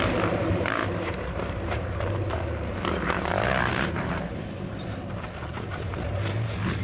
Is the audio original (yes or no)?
no